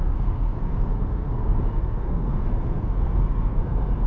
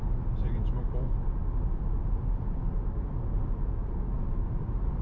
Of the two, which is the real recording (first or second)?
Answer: second